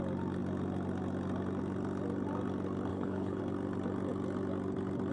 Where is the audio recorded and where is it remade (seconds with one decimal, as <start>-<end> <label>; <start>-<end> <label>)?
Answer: 0.0-2.9 recorded; 2.9-3.4 remade; 3.4-5.1 recorded